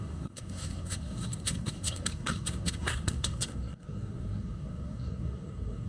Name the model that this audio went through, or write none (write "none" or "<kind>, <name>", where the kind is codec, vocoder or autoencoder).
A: codec, SNAC